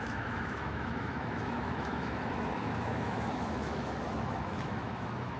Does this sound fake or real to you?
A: fake